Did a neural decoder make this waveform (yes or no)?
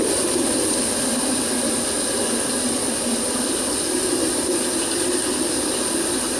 no